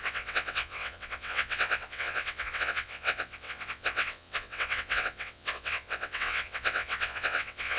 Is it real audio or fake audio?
fake